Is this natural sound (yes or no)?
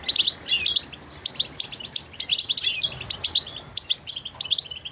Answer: yes